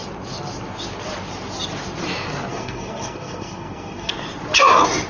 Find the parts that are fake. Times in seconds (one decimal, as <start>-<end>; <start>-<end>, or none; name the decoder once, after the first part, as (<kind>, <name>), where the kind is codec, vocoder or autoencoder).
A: 2.5-4.1 (codec, SNAC)